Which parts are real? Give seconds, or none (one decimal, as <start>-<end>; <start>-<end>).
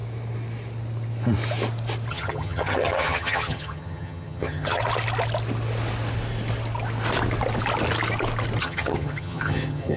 0.0-2.1; 4.8-8.6